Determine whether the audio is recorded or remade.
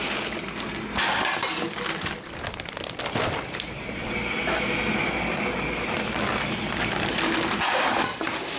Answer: recorded